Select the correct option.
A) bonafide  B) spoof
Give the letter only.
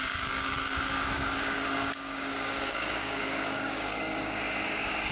B